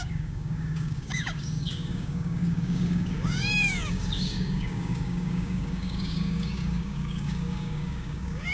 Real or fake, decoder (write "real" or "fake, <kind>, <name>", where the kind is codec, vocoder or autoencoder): fake, codec, DAC